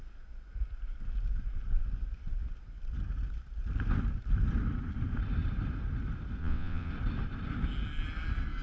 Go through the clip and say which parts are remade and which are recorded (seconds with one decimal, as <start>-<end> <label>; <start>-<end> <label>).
0.0-6.4 recorded; 6.4-6.9 remade; 6.9-8.6 recorded